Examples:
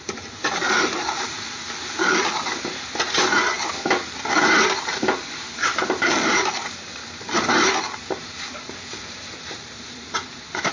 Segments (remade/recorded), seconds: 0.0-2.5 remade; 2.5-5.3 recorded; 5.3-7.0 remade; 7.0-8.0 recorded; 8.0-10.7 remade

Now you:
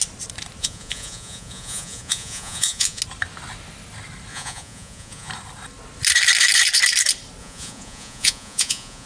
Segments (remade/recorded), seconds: 0.0-0.6 recorded; 0.6-3.0 remade; 3.0-4.3 recorded; 4.3-5.3 remade; 5.3-7.4 recorded; 7.4-9.1 remade